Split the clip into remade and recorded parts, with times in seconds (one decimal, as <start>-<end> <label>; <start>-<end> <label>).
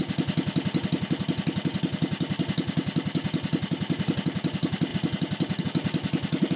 0.0-4.9 recorded; 4.9-5.6 remade; 5.6-6.6 recorded